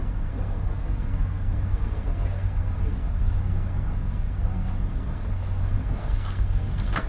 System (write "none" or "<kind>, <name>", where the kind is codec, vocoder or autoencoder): codec, SNAC